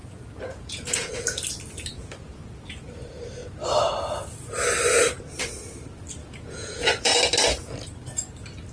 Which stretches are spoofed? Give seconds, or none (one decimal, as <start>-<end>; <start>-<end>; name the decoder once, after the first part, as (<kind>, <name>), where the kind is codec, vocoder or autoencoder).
0.0-1.1 (vocoder, Vocos); 6.2-7.2